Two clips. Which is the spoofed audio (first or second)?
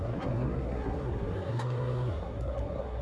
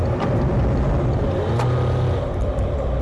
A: first